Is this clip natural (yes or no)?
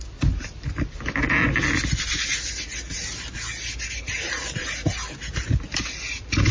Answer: yes